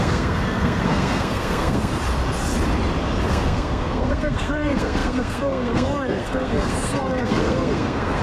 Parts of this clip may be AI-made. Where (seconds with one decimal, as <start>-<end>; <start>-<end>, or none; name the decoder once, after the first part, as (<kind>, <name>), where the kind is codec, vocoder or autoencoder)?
0.0-1.9 (codec, SNAC); 3.3-8.2